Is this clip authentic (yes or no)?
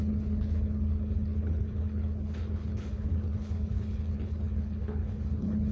no